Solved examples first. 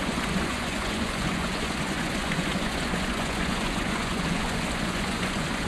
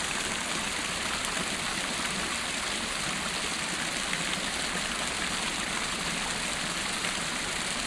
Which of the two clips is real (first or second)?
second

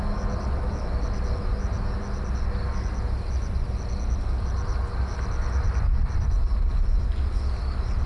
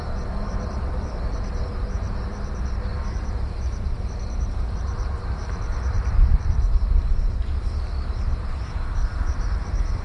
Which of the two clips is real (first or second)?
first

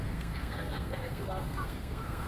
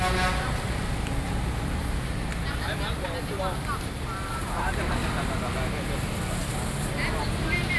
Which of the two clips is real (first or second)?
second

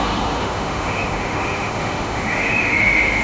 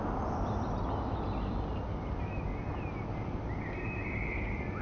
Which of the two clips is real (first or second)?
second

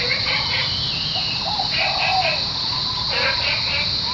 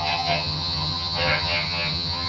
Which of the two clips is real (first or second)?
first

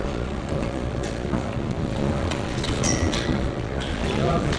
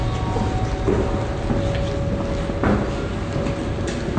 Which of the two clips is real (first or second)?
second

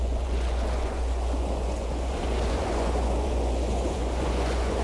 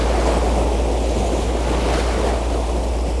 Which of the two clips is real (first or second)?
second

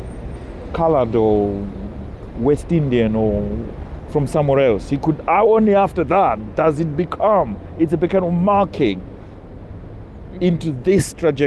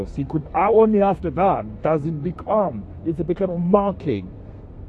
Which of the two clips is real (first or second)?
first